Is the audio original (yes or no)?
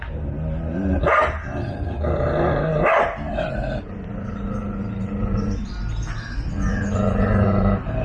yes